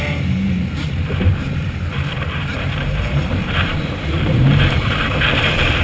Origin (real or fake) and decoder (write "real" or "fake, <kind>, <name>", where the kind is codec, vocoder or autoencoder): fake, vocoder, BigVGAN v2